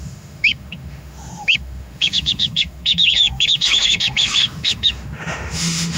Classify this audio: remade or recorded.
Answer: remade